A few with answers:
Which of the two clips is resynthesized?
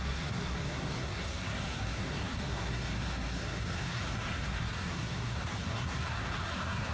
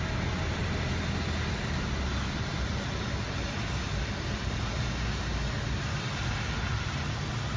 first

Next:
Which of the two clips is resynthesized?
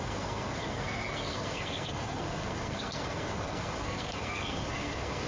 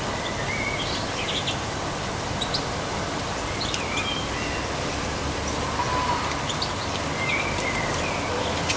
first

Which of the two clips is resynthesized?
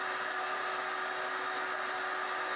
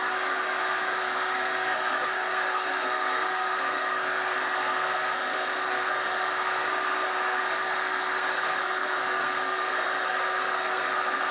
second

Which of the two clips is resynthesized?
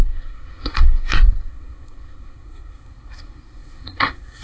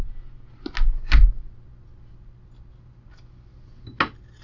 first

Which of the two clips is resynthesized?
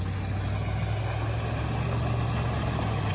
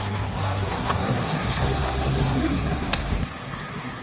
second